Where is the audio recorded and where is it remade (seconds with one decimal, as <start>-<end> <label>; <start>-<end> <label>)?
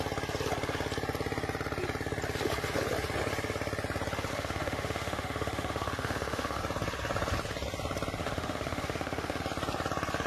0.0-4.3 recorded; 4.3-6.6 remade; 6.6-8.2 recorded; 8.2-9.4 remade; 9.4-10.3 recorded